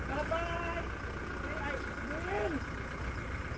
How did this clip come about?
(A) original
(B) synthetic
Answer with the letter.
A